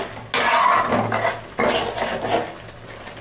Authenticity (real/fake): real